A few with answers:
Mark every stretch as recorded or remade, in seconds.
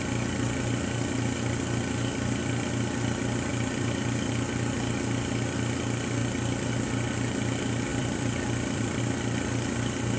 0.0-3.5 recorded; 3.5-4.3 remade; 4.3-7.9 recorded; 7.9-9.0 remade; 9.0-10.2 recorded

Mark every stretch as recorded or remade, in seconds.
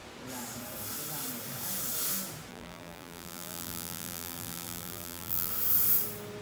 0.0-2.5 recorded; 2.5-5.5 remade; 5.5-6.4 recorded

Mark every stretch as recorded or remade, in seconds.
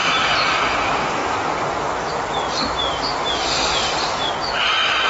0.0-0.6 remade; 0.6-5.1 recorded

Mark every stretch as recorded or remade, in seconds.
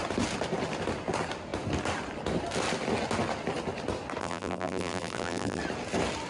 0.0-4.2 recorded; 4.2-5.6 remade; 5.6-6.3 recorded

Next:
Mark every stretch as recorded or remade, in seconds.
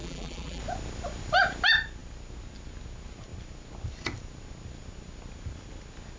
0.0-0.6 remade; 0.6-6.2 recorded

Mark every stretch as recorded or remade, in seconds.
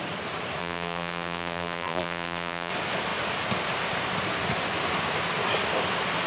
0.0-0.6 recorded; 0.6-2.7 remade; 2.7-6.3 recorded